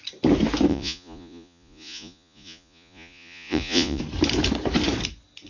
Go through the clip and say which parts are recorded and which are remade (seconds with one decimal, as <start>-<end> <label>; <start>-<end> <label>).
0.0-0.7 recorded; 0.7-4.0 remade; 4.0-5.5 recorded